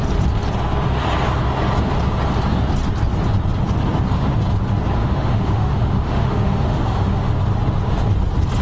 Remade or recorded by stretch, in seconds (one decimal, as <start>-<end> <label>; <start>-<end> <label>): 0.0-5.0 recorded; 5.0-7.3 remade; 7.3-8.6 recorded